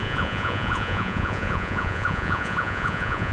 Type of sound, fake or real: fake